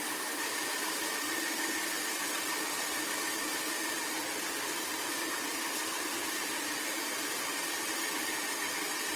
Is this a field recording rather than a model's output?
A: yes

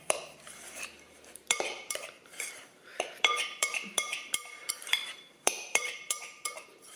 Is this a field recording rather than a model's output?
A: no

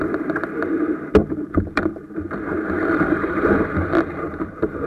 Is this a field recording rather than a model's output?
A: no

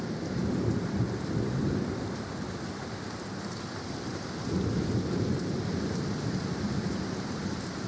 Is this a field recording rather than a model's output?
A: no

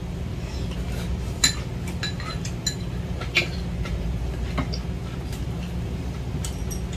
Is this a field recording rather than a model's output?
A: yes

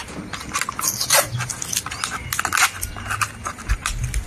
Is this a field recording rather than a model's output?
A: yes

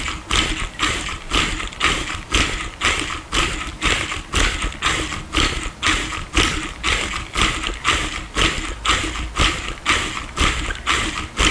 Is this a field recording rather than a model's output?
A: yes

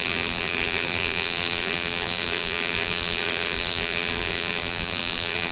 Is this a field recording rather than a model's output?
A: no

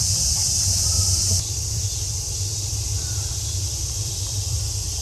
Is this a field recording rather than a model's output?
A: no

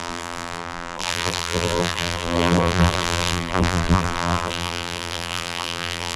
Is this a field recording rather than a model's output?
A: no